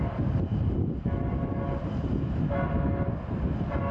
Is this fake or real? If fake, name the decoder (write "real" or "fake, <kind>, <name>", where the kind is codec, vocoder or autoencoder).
real